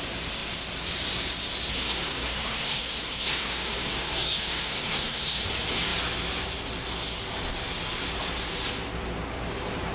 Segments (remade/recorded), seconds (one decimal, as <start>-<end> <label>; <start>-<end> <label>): 0.0-1.7 recorded; 1.7-5.4 remade; 5.4-9.9 recorded